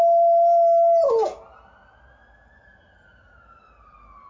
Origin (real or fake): real